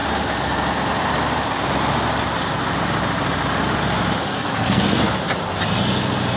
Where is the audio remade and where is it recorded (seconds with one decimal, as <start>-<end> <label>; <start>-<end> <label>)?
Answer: 0.0-4.3 recorded; 4.3-5.0 remade; 5.0-6.4 recorded